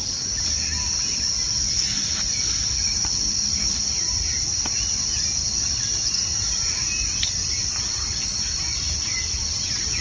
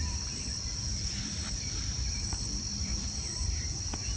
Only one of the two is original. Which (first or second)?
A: first